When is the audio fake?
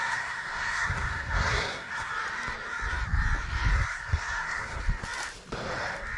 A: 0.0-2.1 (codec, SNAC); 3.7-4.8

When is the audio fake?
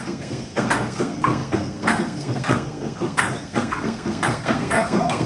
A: 0.0-5.3 (codec, SNAC)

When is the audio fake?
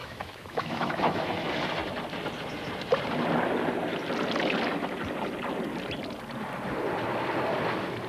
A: 0.0-1.2 (autoencoder, DAC-VAE)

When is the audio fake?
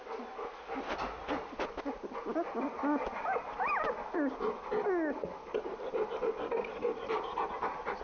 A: none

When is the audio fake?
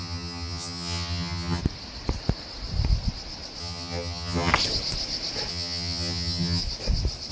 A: 0.0-1.6 (vocoder, HiFi-GAN); 3.6-4.5; 5.5-6.6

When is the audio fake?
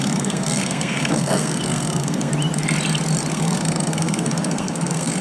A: 0.0-2.3 (codec, SNAC); 3.3-5.2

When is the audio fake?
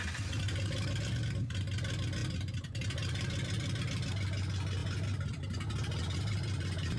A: 2.2-3.8 (vocoder, BigVGAN v2); 4.8-7.0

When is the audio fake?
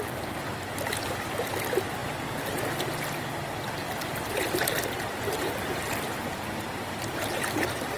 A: none